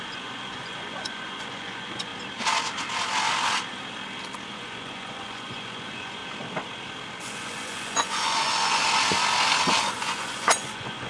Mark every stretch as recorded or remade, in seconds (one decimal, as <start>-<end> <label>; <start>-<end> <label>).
0.0-2.1 remade; 2.1-4.5 recorded; 4.5-6.2 remade; 6.2-7.2 recorded; 7.2-8.8 remade; 8.8-9.8 recorded; 9.8-11.1 remade